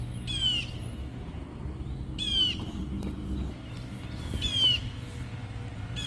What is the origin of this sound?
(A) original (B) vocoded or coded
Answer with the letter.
A